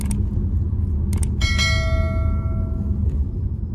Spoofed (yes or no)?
no